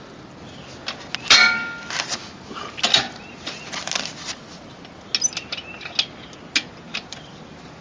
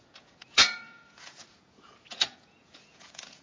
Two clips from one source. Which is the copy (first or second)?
second